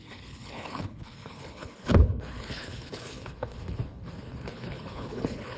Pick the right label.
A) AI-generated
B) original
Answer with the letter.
A